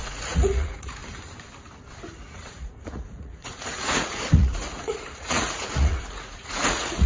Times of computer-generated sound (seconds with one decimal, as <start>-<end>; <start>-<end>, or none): 0.0-1.0; 2.0-7.1